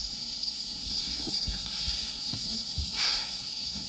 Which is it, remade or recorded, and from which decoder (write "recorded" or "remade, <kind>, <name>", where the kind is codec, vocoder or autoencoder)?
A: remade, codec, SNAC